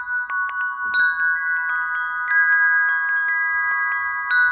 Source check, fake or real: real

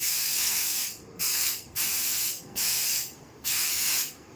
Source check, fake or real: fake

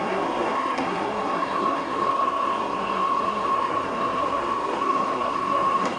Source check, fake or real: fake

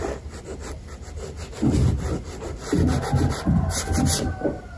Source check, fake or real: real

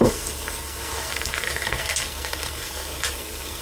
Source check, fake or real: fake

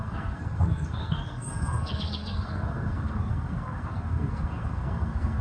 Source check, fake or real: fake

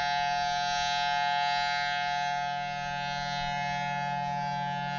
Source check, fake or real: real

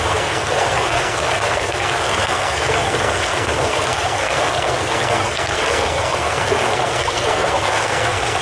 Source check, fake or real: fake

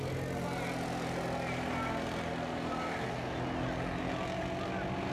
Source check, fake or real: real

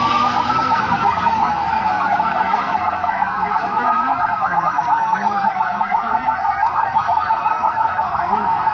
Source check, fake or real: fake